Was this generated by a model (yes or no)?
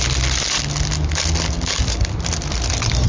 no